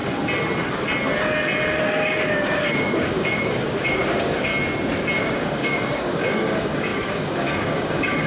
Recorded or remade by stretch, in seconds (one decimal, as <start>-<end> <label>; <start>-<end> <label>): 0.0-1.8 recorded; 1.8-4.5 remade; 4.5-5.2 recorded; 5.2-8.3 remade